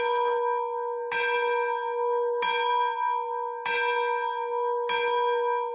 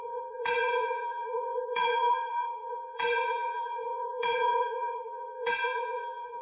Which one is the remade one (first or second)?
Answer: second